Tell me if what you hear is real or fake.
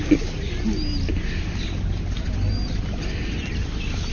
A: real